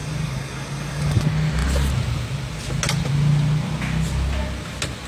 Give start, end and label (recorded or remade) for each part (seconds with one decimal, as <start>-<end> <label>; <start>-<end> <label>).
0.0-1.2 remade; 1.2-5.1 recorded